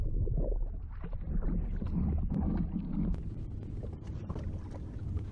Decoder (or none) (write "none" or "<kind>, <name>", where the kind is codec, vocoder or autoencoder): none